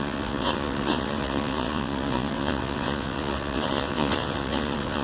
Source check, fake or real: fake